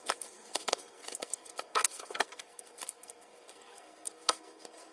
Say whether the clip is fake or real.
fake